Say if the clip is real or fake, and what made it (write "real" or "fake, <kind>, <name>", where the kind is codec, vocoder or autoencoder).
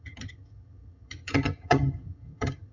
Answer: fake, vocoder, HiFi-GAN